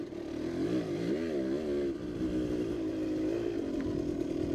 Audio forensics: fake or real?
real